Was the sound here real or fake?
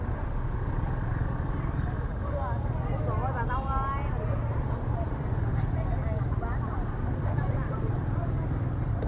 real